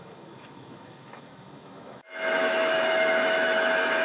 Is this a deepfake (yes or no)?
yes